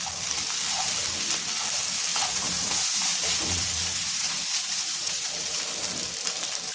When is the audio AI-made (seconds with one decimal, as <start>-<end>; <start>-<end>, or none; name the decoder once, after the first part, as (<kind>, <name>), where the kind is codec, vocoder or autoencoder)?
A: 2.1-5.6 (vocoder, Vocos)